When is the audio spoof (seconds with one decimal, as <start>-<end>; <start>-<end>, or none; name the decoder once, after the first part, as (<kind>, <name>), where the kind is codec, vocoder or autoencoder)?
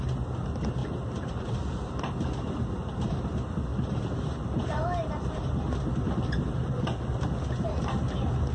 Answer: 0.8-1.7 (vocoder, BigVGAN v2); 3.7-5.8